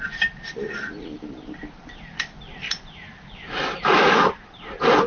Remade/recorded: recorded